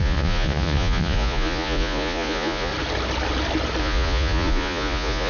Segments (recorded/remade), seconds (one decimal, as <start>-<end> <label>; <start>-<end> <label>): 0.0-2.7 remade; 2.7-3.8 recorded; 3.8-5.3 remade